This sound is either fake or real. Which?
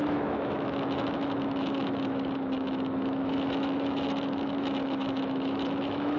fake